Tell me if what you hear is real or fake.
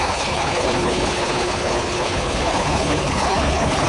fake